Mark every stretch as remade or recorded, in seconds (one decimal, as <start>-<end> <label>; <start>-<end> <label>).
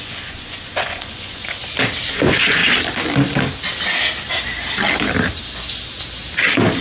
0.0-1.6 remade; 1.6-2.1 recorded; 2.1-2.6 remade; 2.6-6.8 recorded